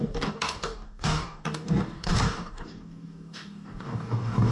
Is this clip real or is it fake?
fake